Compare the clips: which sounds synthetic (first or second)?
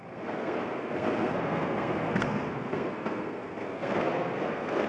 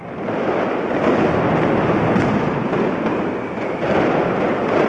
first